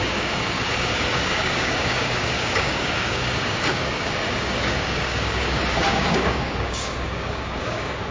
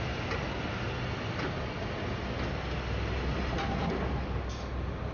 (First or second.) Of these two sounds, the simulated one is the first